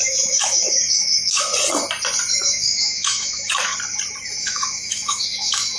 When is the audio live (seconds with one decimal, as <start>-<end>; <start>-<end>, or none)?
1.5-2.4; 3.7-4.4